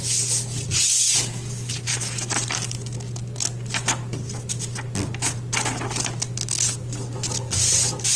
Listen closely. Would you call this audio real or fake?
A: real